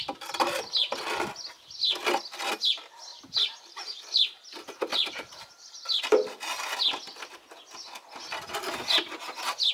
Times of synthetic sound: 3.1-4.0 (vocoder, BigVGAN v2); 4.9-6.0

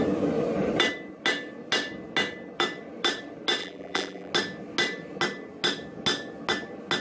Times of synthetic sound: 3.6-4.3 (vocoder, BigVGAN v2)

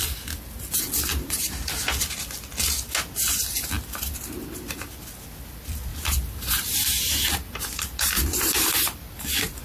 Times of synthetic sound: 1.1-1.6 (vocoder, BigVGAN v2); 5.9-9.6

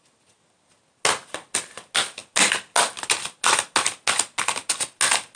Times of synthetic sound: none

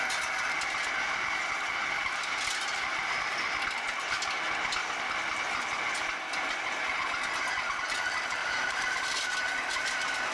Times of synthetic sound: 8.4-9.0 (vocoder, BigVGAN v2)

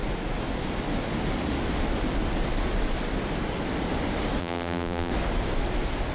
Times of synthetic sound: 4.4-5.1 (vocoder, BigVGAN v2)

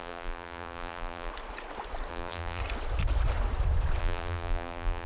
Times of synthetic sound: 0.0-1.3 (vocoder, BigVGAN v2); 2.1-2.6; 4.0-5.1

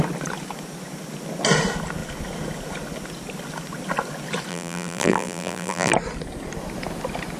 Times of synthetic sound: 4.5-5.9 (vocoder, BigVGAN v2)